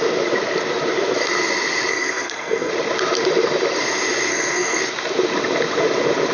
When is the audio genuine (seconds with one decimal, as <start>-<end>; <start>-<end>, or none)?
0.0-1.9; 2.7-4.3; 4.8-6.3